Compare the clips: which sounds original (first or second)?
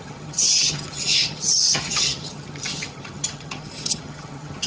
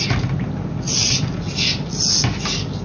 second